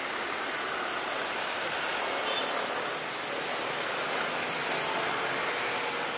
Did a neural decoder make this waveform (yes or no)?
no